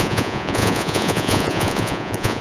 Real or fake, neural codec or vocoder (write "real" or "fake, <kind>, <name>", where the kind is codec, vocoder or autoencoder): fake, vocoder, Vocos